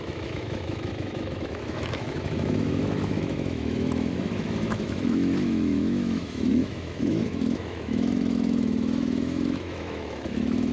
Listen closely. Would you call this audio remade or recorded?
remade